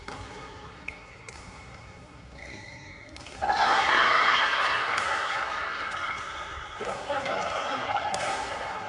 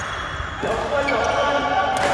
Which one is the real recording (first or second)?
second